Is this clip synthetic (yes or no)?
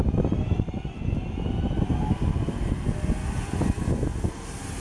no